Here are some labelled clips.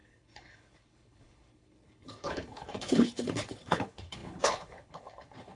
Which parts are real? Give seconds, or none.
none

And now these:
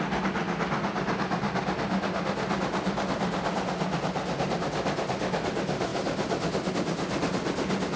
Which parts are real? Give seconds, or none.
0.0-8.0

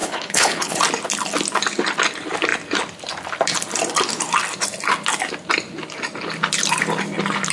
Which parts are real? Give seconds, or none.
0.8-7.5

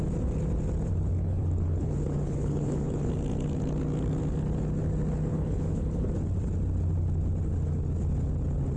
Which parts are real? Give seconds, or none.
0.0-1.2; 3.1-5.3; 6.1-8.8